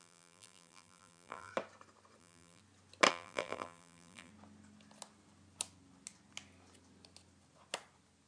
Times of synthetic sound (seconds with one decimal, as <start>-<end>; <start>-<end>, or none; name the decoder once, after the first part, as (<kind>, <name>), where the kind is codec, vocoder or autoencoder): 0.0-1.5 (vocoder, BigVGAN v2); 2.2-2.6; 3.1-4.3